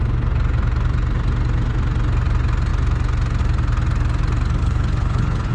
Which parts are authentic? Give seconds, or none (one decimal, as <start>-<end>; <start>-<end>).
0.0-4.6